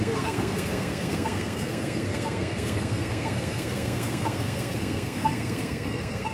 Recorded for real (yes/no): no